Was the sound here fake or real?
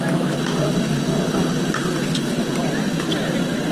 real